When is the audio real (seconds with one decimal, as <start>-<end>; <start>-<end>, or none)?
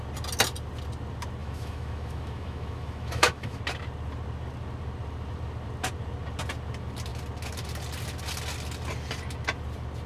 0.0-1.4; 3.6-10.1